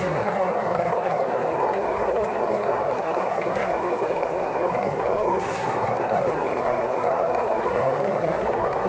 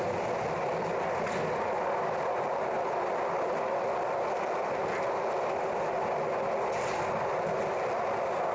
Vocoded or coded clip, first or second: first